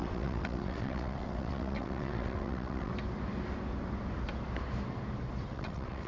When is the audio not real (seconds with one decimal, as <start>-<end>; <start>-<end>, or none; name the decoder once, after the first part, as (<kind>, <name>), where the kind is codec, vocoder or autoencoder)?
0.0-2.9 (vocoder, WaveNeXt); 5.5-6.1